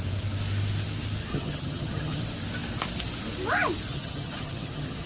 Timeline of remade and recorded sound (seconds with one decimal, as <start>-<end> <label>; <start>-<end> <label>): 0.0-1.3 recorded; 1.3-2.2 remade; 2.2-3.9 recorded; 3.9-5.1 remade